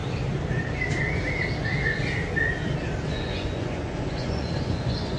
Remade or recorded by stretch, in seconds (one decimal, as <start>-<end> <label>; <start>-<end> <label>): 0.0-3.1 recorded; 3.1-5.2 remade